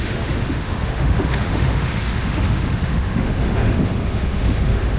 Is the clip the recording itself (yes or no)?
no